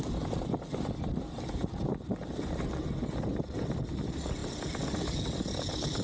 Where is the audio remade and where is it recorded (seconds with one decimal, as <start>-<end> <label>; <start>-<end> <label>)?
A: 0.0-6.0 recorded